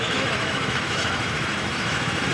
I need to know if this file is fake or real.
fake